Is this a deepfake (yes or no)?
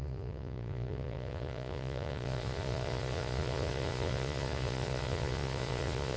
yes